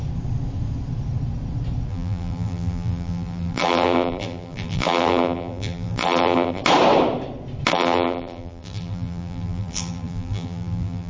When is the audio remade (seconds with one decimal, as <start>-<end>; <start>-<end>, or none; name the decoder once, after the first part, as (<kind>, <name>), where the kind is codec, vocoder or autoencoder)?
1.9-6.6 (vocoder, BigVGAN v2); 7.7-11.1